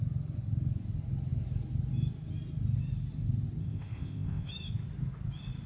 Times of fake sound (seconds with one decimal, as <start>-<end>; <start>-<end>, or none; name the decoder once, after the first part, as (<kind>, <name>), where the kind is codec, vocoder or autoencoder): 3.6-4.5 (codec, ZipCodec)